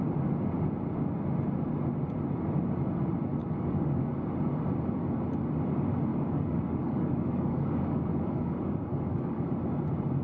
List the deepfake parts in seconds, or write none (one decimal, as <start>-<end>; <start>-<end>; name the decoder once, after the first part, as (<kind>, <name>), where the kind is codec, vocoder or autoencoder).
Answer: 3.4-4.0 (codec, DAC); 6.1-9.5